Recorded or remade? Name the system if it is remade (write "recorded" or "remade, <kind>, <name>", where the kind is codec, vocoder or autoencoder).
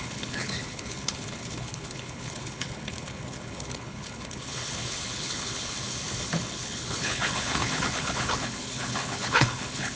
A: remade, codec, HILCodec